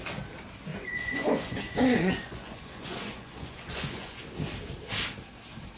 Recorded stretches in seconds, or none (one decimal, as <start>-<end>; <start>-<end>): 0.0-0.7; 4.2-5.8